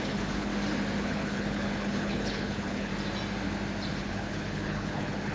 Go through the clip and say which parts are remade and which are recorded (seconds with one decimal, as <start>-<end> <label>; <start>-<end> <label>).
0.0-0.5 remade; 0.5-1.0 recorded; 1.0-2.9 remade; 2.9-3.9 recorded; 3.9-5.3 remade